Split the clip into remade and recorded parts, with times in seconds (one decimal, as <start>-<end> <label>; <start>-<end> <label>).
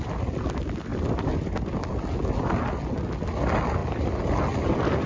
0.0-5.1 recorded